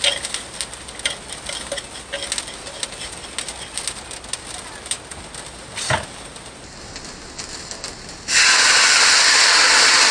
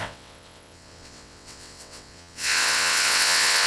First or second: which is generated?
second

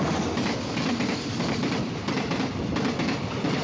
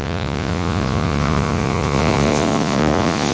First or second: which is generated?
second